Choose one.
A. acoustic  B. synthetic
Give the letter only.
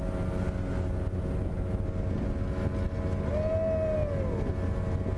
A